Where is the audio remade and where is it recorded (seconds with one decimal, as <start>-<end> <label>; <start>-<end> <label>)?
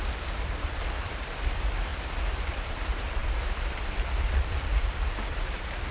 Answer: 0.0-1.9 remade; 1.9-2.5 recorded; 2.5-5.9 remade